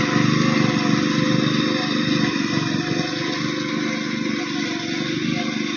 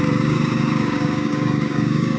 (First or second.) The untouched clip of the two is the first